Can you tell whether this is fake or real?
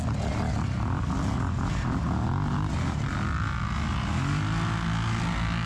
real